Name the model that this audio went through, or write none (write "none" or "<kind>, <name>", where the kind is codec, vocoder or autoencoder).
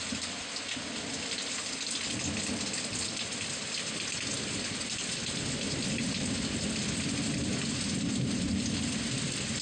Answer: none